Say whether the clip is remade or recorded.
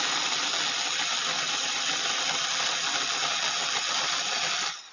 recorded